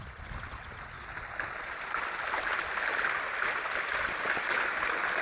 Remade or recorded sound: recorded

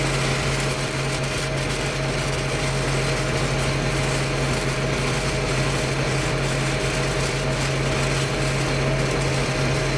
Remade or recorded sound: recorded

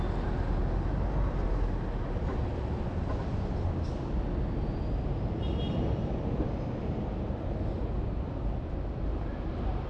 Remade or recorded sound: recorded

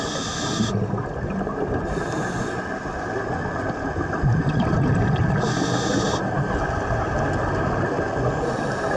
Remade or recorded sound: recorded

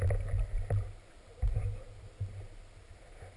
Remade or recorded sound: recorded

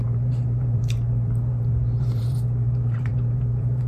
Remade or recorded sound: remade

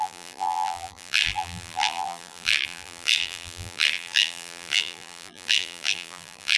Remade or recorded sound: remade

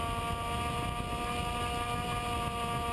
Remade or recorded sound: recorded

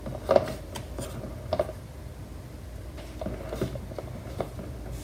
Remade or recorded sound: recorded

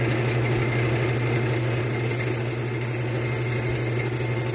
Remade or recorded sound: recorded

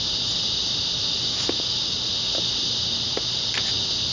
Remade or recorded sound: recorded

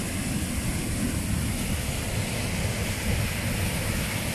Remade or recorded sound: recorded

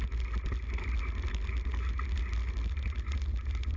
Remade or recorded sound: recorded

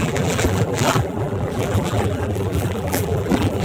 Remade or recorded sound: remade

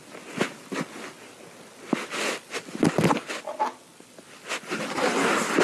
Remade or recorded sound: recorded